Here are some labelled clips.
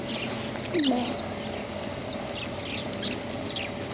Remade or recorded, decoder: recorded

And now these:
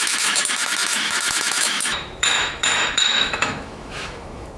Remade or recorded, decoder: remade, autoencoder, DAC-VAE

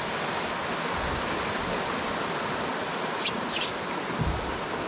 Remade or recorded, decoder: recorded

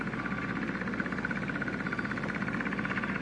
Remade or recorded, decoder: recorded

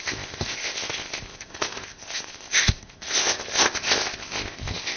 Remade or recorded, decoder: remade, codec, ZipCodec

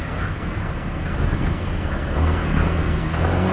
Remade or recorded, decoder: remade, codec, SNAC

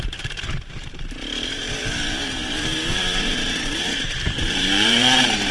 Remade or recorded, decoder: remade, vocoder, BigVGAN v2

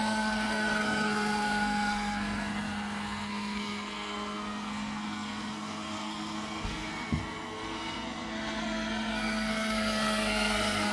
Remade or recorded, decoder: remade, codec, SNAC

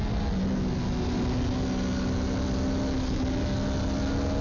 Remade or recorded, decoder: recorded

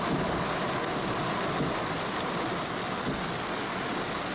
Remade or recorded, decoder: recorded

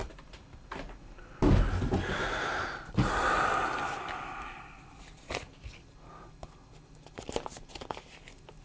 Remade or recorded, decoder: recorded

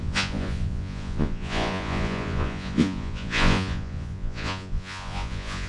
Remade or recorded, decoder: remade, vocoder, Vocos